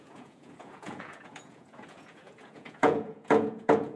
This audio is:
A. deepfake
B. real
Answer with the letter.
A